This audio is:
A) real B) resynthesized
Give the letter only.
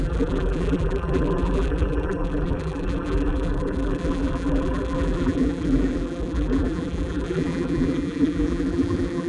B